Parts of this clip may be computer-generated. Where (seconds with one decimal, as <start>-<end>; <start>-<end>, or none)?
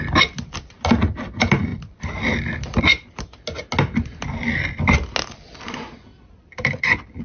1.7-2.8; 6.1-7.2